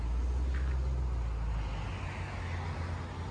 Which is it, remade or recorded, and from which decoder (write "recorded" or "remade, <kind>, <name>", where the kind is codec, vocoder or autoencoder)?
recorded